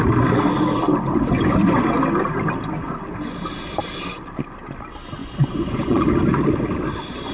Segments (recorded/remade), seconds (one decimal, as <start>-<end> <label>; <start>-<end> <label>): 0.0-5.2 recorded; 5.2-6.1 remade; 6.1-7.3 recorded